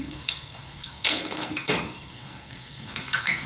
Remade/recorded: remade